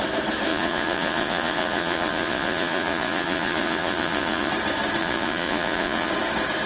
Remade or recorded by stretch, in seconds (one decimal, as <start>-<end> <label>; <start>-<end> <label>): 0.0-0.5 recorded; 0.5-4.5 remade; 4.5-5.0 recorded; 5.0-6.1 remade; 6.1-6.7 recorded